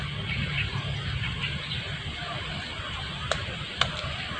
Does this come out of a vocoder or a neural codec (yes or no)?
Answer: no